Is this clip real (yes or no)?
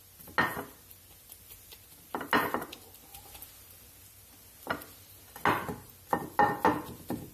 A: yes